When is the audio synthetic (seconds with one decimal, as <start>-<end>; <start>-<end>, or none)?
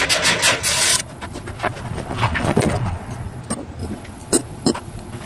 0.9-3.4; 3.8-5.3